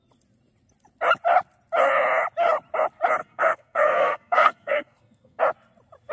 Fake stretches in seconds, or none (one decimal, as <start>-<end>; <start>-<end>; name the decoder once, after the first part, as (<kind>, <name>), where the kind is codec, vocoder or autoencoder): 3.2-5.4 (codec, SNAC)